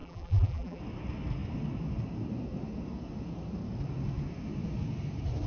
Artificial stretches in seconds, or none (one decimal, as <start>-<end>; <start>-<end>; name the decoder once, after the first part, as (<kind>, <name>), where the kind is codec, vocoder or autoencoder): 0.0-0.8 (vocoder, BigVGAN v2)